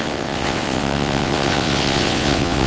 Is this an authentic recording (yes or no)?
no